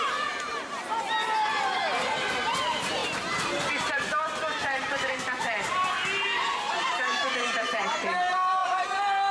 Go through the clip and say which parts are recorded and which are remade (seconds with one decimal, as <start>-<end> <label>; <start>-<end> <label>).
0.0-3.0 remade; 3.0-3.7 recorded; 3.7-9.3 remade